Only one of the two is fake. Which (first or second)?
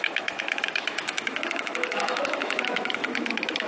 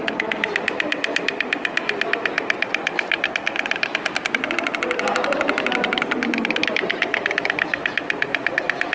first